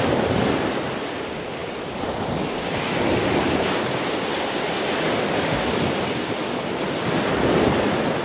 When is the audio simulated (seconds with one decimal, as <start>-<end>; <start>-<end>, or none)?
none